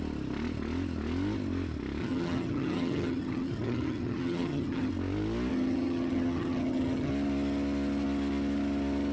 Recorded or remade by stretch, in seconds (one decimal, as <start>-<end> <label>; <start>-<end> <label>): 0.0-2.0 recorded; 2.0-4.9 remade; 4.9-5.5 recorded; 5.5-7.1 remade; 7.1-9.1 recorded